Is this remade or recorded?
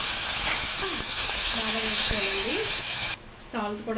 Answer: remade